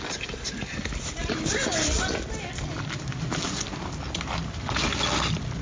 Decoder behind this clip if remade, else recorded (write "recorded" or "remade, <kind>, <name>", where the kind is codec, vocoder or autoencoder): recorded